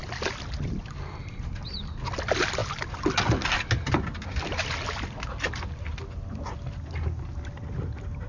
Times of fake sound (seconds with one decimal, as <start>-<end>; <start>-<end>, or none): none